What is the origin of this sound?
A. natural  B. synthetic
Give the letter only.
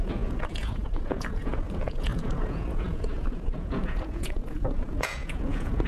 B